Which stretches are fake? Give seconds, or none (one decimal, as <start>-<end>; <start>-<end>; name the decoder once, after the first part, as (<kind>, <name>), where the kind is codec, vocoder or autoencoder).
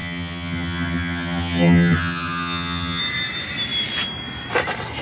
0.0-3.0 (vocoder, HiFi-GAN)